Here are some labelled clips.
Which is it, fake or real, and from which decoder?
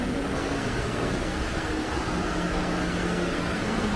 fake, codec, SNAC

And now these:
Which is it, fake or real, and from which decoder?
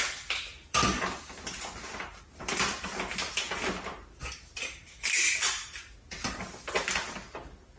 real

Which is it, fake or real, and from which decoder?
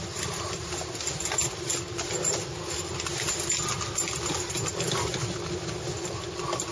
real